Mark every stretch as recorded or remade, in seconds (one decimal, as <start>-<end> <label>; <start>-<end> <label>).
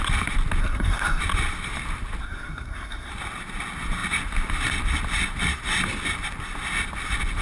0.0-0.6 recorded; 0.6-1.2 remade; 1.2-2.2 recorded; 2.2-3.1 remade; 3.1-7.4 recorded